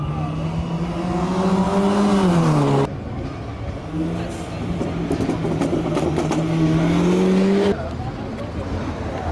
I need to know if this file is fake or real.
real